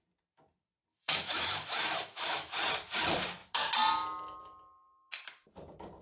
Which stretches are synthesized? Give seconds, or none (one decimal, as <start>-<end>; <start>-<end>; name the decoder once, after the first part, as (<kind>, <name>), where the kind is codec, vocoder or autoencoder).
0.9-2.5 (autoencoder, DAC-VAE)

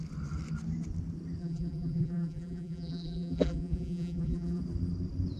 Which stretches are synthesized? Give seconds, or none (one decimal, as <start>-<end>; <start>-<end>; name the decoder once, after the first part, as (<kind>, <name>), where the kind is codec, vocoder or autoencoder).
1.4-4.6 (vocoder, BigVGAN v2)

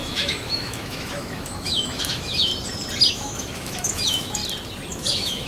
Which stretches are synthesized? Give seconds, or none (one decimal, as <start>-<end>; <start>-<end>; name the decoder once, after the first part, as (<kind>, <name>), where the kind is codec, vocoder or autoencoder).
0.0-2.5 (autoencoder, DAC-VAE); 3.1-4.4; 4.9-5.5

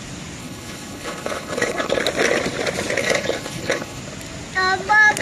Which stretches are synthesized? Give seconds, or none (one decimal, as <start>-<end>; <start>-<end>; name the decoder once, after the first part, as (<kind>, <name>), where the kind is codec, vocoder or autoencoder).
0.4-2.0 (codec, HILCodec); 3.0-4.0

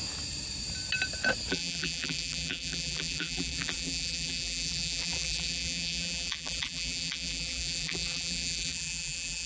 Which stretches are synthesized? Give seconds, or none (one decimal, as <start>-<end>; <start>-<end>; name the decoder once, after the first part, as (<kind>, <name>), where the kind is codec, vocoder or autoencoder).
1.5-9.5 (vocoder, BigVGAN v2)

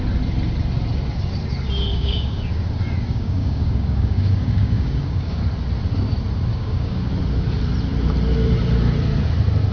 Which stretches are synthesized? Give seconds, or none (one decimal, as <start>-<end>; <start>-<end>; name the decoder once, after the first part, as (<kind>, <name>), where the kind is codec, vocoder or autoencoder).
1.9-2.4 (codec, DAC); 3.1-5.4; 6.5-7.1

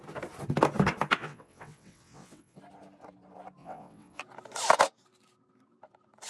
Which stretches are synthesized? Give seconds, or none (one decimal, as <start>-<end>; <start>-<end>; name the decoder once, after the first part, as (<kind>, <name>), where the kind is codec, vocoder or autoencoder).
1.2-2.6 (vocoder, WaveNeXt); 3.6-4.2